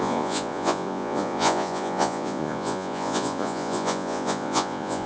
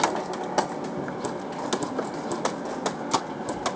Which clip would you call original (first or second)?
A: second